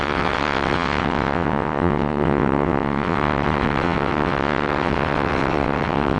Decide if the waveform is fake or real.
fake